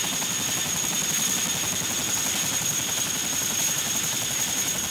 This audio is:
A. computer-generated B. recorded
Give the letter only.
B